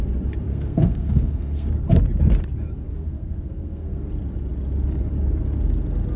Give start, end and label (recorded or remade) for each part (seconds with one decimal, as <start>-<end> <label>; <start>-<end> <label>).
0.0-0.5 recorded; 0.5-1.7 remade; 1.7-2.9 recorded; 2.9-4.1 remade; 4.1-6.2 recorded